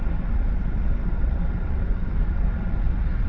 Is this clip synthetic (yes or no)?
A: yes